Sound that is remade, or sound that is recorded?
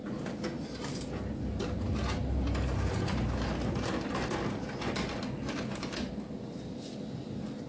recorded